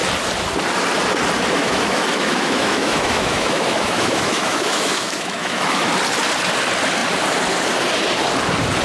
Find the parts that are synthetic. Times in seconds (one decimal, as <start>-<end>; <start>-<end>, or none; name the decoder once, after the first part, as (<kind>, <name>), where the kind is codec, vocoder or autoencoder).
1.6-5.9 (autoencoder, DAC-VAE)